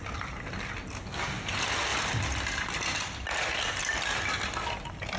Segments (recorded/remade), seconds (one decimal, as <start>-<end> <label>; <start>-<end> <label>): 0.0-5.2 recorded